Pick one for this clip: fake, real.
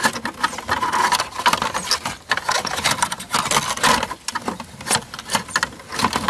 real